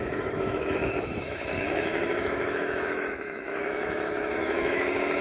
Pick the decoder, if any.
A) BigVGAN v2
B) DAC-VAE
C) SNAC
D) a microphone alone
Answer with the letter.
B